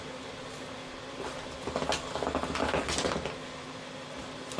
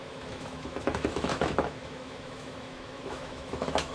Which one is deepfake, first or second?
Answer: second